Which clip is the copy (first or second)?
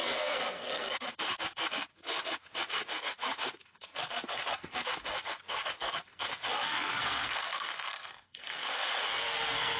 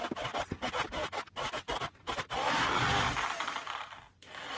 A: first